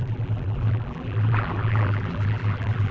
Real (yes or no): no